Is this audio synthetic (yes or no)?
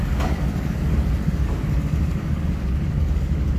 yes